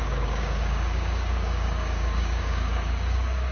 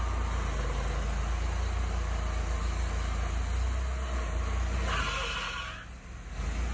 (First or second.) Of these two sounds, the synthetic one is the first